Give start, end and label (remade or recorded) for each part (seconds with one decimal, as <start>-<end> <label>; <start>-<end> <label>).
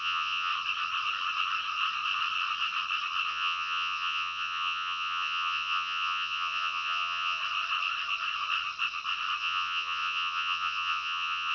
0.0-0.5 remade; 0.5-3.3 recorded; 3.3-7.4 remade; 7.4-9.4 recorded; 9.4-11.5 remade